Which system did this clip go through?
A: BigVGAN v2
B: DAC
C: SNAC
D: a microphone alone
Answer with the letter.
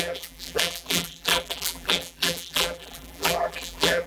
A